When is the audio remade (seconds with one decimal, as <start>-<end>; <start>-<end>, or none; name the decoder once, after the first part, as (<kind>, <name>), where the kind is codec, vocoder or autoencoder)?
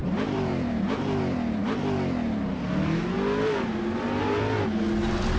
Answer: 0.0-1.2 (vocoder, BigVGAN v2)